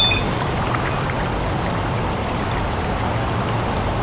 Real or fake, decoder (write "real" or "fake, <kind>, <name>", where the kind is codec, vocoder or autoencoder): real